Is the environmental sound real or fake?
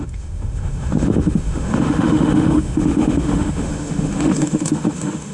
fake